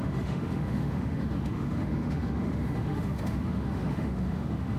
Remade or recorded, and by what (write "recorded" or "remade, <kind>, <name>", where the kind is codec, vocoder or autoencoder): remade, autoencoder, DAC-VAE